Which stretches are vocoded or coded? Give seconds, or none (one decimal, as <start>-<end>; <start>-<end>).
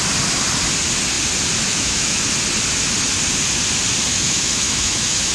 1.7-2.2; 4.1-5.3